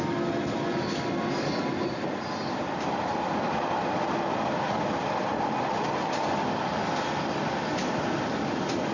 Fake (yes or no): no